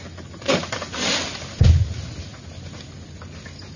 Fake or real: real